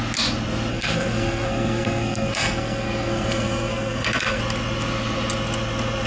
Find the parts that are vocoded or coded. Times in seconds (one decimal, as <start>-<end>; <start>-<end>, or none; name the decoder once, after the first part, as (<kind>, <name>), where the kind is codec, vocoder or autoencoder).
0.7-4.4 (codec, SNAC)